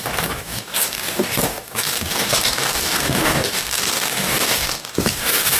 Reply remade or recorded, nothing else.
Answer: remade